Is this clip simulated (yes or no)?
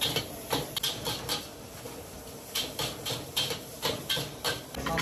no